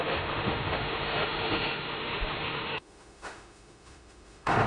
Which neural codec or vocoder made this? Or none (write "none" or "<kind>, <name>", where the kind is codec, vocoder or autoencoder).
autoencoder, DAC-VAE